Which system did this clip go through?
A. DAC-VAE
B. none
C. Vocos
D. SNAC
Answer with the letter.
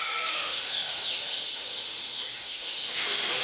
A